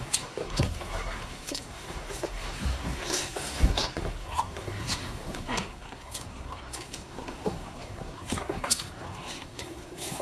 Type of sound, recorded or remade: remade